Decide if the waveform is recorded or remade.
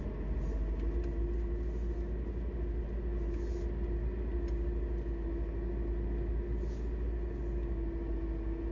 recorded